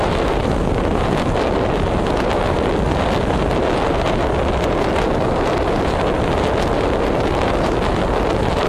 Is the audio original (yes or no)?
yes